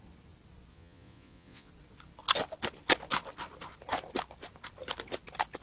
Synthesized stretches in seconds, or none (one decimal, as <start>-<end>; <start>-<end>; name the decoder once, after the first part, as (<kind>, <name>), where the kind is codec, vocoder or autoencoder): 0.7-1.7 (vocoder, Vocos)